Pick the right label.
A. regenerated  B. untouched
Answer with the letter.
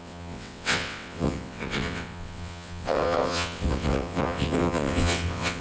A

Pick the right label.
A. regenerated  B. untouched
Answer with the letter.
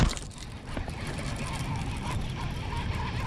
B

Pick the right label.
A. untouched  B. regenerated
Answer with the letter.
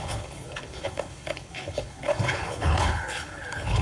B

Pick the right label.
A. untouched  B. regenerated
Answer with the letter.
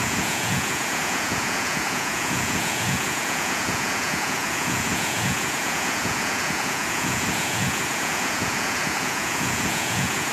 B